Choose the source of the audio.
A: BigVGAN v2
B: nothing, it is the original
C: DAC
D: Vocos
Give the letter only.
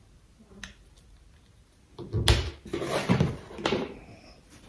B